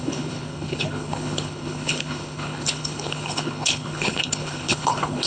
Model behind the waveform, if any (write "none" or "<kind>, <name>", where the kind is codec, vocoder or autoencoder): codec, HILCodec